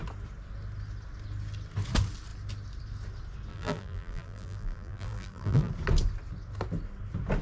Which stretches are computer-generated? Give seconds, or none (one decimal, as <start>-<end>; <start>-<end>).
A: 3.5-5.7